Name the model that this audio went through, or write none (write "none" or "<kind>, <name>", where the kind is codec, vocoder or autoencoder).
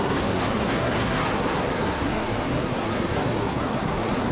codec, SNAC